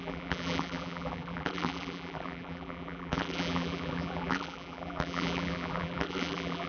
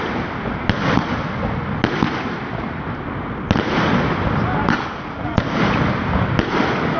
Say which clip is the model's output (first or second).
first